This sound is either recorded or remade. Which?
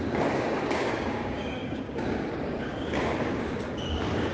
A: remade